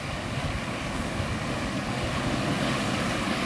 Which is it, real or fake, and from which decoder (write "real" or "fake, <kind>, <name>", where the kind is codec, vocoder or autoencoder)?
fake, codec, DAC